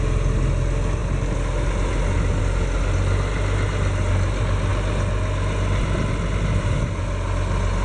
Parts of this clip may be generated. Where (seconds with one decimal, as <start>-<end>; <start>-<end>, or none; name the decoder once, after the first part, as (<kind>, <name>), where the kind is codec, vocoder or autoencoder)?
none